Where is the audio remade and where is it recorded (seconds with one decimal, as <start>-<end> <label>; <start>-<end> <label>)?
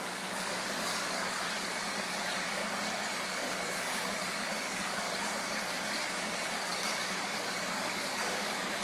0.0-2.6 remade; 2.6-3.3 recorded; 3.3-8.8 remade